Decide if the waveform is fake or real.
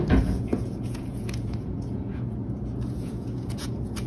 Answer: fake